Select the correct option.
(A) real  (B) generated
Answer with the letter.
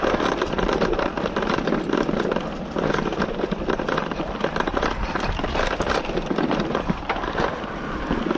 A